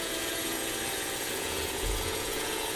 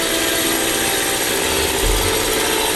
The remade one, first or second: first